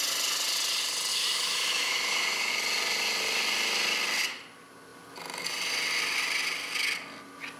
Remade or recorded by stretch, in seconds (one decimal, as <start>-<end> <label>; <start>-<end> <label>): 0.0-1.1 recorded; 1.1-2.5 remade; 2.5-7.6 recorded